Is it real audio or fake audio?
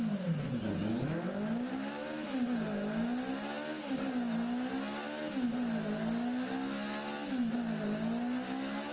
real